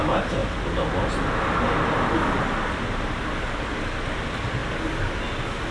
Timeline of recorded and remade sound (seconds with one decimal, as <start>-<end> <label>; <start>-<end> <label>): 0.0-5.7 recorded